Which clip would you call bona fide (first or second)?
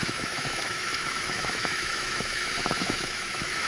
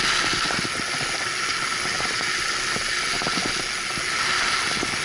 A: second